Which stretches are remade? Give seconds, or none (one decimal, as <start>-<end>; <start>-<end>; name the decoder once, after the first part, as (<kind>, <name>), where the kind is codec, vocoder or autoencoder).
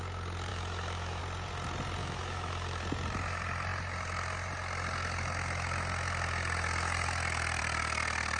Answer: 0.5-1.2 (autoencoder, DAC-VAE); 2.0-2.8